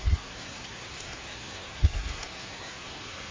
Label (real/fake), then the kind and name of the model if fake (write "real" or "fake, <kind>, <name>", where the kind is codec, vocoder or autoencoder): fake, codec, SNAC